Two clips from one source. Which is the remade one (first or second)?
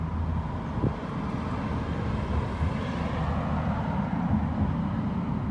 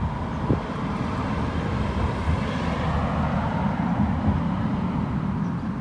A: second